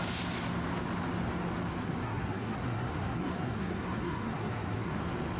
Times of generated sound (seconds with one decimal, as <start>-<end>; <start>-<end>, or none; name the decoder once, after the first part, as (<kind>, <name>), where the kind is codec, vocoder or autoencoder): 1.8-5.0 (codec, SNAC)